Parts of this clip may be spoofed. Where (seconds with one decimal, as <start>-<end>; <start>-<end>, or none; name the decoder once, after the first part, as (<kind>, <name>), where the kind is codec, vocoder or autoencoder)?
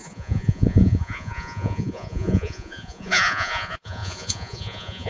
0.0-5.1 (vocoder, Vocos)